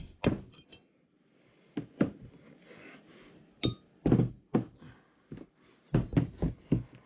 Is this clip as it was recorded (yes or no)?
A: yes